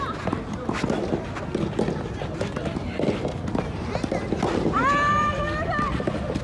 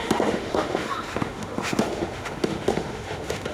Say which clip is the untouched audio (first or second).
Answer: first